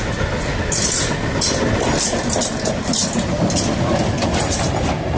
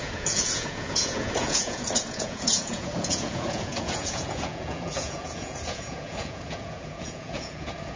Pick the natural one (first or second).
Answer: first